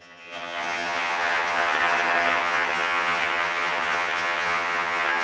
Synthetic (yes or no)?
yes